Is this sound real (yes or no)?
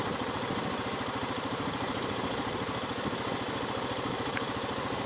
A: yes